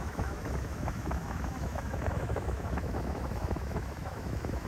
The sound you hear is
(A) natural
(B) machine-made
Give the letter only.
B